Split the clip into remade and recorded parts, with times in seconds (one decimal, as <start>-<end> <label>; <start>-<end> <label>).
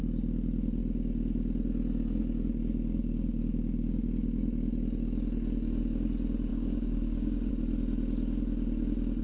0.0-6.5 recorded; 6.5-7.5 remade; 7.5-9.2 recorded